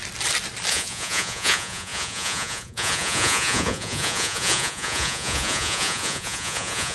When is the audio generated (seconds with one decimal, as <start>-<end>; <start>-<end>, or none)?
0.7-6.9